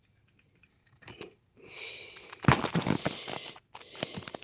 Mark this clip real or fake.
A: real